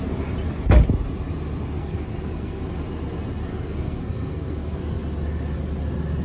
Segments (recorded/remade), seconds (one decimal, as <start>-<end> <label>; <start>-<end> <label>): 0.0-1.8 recorded; 1.8-2.6 remade; 2.6-3.5 recorded; 3.5-4.8 remade; 4.8-6.2 recorded